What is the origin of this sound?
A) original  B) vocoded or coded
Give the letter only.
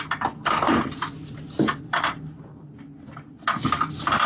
A